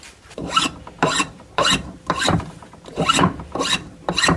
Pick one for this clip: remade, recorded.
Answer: remade